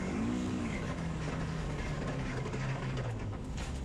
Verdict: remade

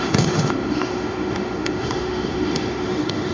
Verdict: remade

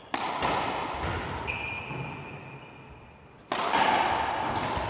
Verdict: recorded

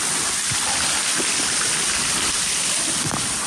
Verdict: recorded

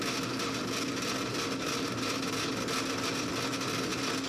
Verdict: recorded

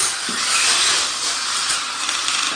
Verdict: recorded